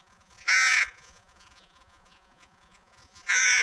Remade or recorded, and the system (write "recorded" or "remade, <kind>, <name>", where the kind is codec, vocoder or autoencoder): remade, vocoder, Vocos